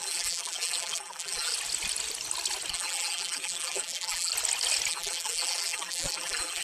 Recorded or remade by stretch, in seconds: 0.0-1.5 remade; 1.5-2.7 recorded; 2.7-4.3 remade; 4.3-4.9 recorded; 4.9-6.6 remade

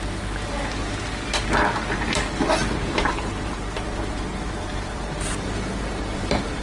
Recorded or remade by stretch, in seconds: 0.0-2.6 recorded; 2.6-6.6 remade